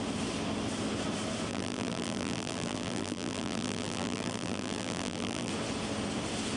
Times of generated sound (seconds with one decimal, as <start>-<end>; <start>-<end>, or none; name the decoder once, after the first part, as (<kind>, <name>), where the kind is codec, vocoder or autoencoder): 1.5-5.5 (vocoder, BigVGAN v2)